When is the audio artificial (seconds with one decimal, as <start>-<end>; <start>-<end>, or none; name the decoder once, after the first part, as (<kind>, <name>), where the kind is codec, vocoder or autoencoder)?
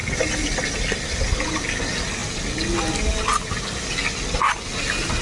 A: none